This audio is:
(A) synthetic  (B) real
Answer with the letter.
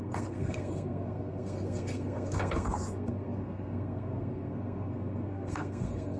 A